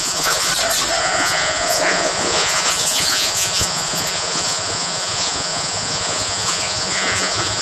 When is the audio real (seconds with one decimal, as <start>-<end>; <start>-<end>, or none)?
0.5-1.0